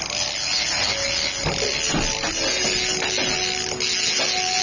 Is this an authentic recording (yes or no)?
yes